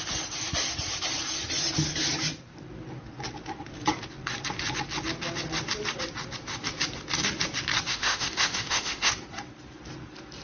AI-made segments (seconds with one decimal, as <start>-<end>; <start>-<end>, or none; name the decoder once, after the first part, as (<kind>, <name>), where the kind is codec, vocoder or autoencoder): 7.9-9.1 (autoencoder, DAC-VAE)